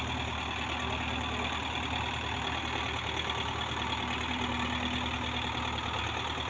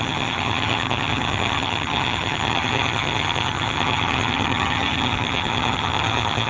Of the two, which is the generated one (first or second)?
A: second